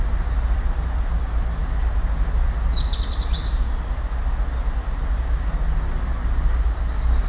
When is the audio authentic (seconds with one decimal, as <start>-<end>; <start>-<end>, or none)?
0.0-7.3